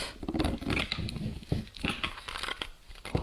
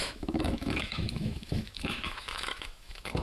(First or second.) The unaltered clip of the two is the first